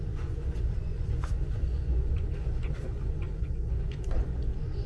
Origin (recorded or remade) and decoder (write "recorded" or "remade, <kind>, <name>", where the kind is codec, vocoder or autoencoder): remade, vocoder, Vocos